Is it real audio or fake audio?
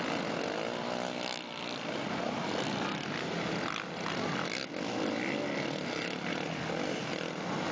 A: real